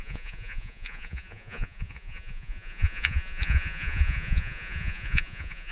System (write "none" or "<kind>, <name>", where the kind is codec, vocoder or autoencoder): vocoder, Vocos